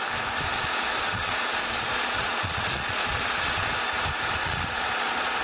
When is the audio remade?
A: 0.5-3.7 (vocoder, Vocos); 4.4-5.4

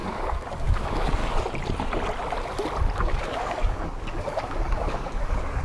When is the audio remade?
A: 0.0-1.2 (codec, DAC); 2.9-5.6